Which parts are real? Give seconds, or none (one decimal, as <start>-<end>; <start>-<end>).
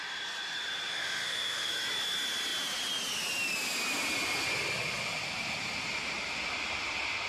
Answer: 0.0-0.9; 1.7-7.3